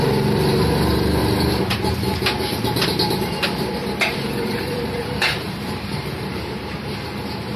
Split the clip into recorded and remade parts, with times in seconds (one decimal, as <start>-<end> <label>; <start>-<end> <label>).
0.0-1.2 recorded; 1.2-1.8 remade; 1.8-3.7 recorded; 3.7-7.6 remade